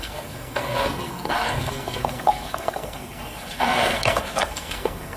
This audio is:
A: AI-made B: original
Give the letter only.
A